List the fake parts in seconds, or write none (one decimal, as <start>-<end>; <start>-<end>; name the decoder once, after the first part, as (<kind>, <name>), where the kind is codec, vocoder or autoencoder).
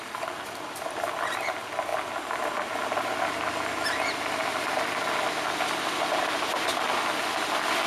none